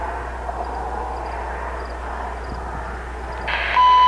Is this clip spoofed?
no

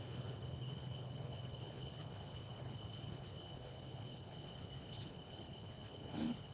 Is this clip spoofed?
yes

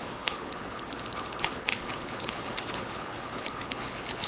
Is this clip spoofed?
yes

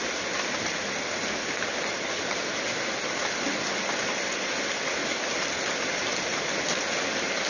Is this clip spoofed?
no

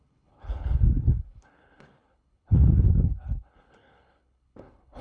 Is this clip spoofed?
yes